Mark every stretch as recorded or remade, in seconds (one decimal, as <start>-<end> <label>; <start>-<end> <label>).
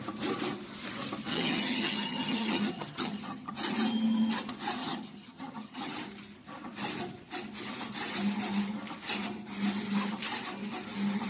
0.0-1.3 recorded; 1.3-3.5 remade; 3.5-4.8 recorded; 4.8-5.9 remade; 5.9-11.3 recorded